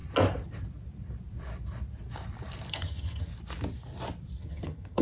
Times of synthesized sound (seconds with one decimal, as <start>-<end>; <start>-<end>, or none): 2.7-3.3; 4.4-5.0